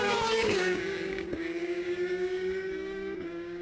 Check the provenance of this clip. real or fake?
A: fake